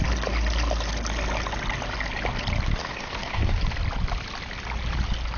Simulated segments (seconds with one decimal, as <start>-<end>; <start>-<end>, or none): 2.8-3.6